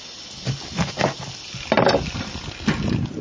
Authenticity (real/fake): real